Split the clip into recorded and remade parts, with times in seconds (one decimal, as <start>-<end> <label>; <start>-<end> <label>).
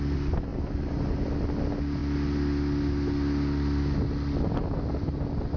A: 0.0-5.6 recorded